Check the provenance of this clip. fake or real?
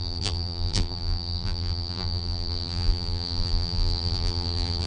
fake